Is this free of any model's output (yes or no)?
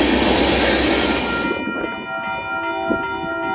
yes